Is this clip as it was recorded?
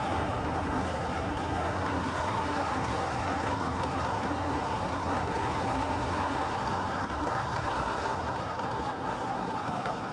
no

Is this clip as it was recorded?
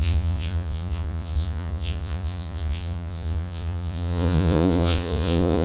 no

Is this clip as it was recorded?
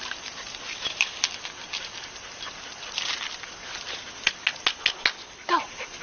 yes